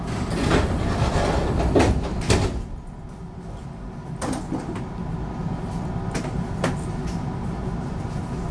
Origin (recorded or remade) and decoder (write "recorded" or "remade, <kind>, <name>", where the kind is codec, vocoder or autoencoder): recorded